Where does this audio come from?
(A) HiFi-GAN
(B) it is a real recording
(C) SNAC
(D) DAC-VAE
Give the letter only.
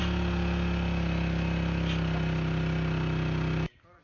B